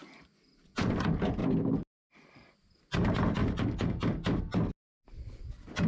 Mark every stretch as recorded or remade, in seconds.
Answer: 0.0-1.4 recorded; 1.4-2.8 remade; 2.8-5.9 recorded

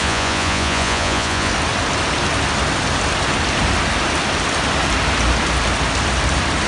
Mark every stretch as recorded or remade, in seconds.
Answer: 0.0-1.5 remade; 1.5-6.7 recorded

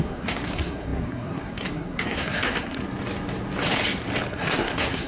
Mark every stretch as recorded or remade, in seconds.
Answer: 0.0-2.8 remade; 2.8-4.3 recorded; 4.3-5.1 remade

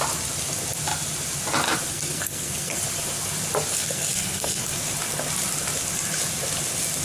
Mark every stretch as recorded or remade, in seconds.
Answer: 0.0-1.9 recorded; 1.9-2.8 remade; 2.8-3.7 recorded; 3.7-4.6 remade; 4.6-7.0 recorded